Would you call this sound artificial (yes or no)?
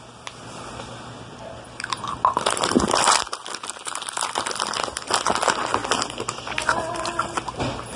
no